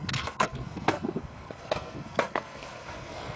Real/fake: fake